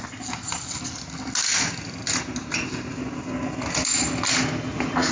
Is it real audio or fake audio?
real